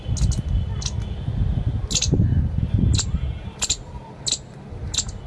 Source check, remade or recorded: recorded